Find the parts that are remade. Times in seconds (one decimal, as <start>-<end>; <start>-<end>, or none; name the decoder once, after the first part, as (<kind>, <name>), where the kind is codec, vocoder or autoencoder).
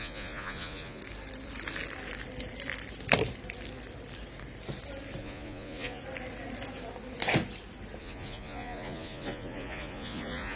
0.0-1.0 (vocoder, Vocos); 5.2-6.0; 8.0-10.6